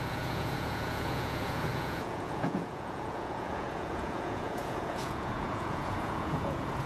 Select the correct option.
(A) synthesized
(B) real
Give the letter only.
A